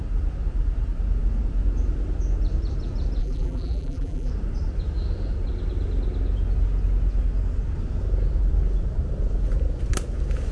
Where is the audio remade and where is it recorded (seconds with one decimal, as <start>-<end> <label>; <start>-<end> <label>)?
0.0-3.2 recorded; 3.2-4.3 remade; 4.3-10.5 recorded